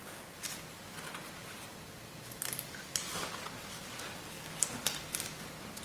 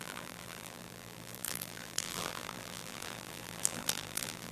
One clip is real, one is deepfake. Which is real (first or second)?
first